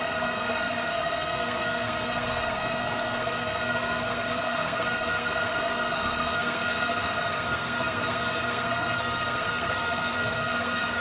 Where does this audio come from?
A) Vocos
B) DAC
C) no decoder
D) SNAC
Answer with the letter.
D